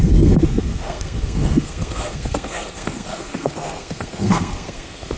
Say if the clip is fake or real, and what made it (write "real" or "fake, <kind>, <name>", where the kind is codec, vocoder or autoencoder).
fake, codec, SNAC